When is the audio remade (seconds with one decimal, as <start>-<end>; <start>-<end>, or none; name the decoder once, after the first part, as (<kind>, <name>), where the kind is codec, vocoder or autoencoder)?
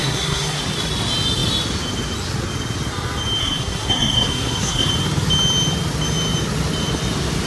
0.0-0.6 (codec, SNAC); 3.4-4.9